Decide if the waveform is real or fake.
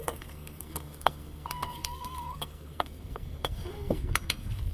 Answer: fake